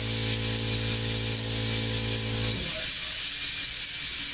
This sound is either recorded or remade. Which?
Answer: recorded